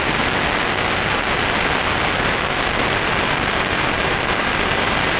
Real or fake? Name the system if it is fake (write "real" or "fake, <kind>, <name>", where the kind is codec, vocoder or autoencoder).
real